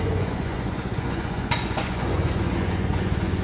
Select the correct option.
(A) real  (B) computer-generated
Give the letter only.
B